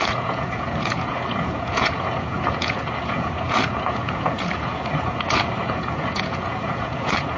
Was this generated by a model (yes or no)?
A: yes